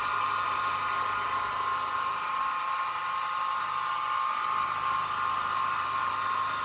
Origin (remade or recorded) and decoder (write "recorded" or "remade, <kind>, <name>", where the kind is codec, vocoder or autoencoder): recorded